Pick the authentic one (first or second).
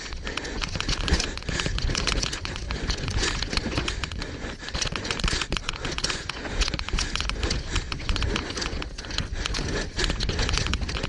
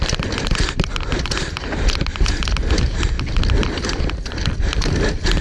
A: second